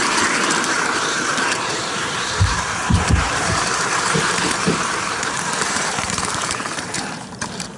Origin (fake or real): fake